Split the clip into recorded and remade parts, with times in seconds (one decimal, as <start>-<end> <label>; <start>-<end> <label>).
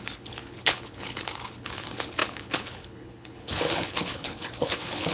0.0-5.1 remade